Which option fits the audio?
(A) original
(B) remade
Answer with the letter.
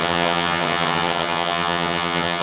B